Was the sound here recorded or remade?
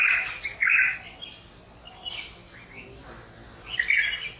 recorded